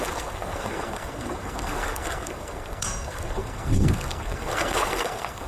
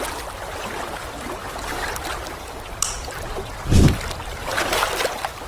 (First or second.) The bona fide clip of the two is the second